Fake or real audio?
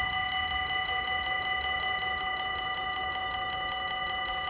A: real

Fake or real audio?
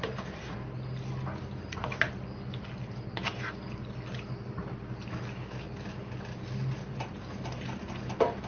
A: real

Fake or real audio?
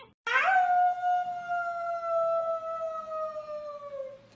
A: real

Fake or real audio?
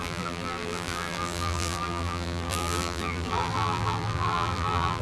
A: fake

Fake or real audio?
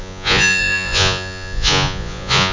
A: fake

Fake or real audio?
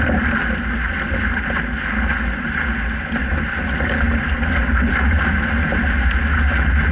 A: real